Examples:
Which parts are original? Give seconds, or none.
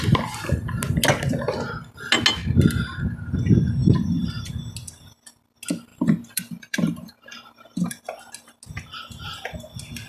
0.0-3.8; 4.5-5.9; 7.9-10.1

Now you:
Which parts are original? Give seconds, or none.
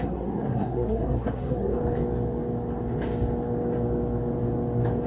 1.8-5.1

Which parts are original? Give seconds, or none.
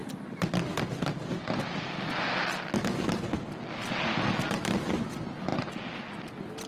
0.0-6.7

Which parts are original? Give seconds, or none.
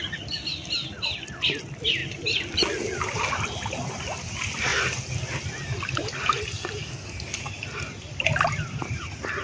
0.0-6.8; 7.4-9.4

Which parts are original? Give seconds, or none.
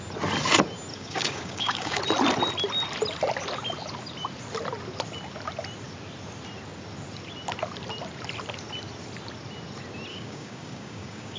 0.0-0.9; 2.0-10.1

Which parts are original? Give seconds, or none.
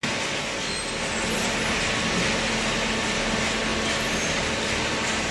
0.0-3.7; 4.7-5.3